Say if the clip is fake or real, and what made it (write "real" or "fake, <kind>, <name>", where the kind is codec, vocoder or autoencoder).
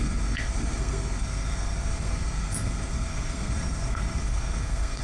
fake, codec, SNAC